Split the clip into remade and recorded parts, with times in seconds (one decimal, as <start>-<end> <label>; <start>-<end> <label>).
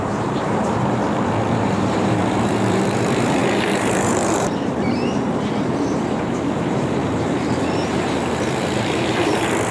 0.0-1.0 remade; 1.0-1.5 recorded; 1.5-9.7 remade